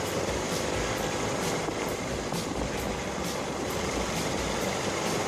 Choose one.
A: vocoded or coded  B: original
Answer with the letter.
A